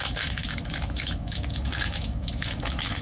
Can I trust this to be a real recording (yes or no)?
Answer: no